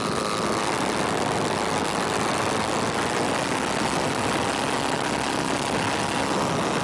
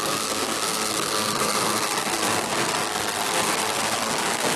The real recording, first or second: first